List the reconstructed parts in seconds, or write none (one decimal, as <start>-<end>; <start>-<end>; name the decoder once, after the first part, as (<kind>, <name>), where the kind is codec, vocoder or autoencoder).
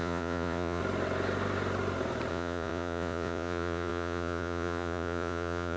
0.0-0.8 (vocoder, Vocos); 2.3-5.8